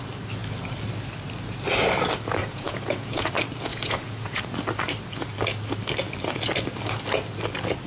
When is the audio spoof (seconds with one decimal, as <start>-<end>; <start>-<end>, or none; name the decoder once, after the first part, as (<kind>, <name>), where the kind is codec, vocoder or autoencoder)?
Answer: 2.4-3.3 (vocoder, Vocos); 3.7-4.4

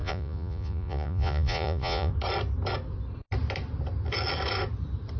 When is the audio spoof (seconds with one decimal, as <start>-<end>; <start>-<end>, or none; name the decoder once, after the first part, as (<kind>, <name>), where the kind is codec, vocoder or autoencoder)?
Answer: 0.0-2.1 (vocoder, Vocos)

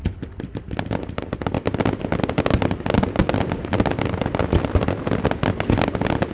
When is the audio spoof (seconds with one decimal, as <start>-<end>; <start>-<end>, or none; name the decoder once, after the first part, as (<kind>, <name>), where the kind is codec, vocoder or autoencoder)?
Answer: none

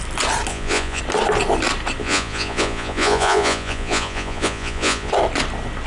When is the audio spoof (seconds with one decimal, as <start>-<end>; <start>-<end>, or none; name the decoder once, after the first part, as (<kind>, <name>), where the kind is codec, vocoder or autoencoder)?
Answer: 0.5-1.0 (vocoder, Vocos); 2.0-5.1